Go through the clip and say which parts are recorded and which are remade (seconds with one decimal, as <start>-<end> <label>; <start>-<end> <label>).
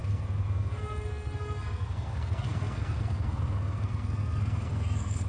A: 0.0-5.3 remade